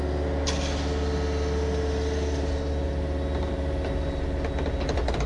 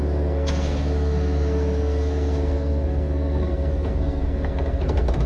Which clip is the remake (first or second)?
second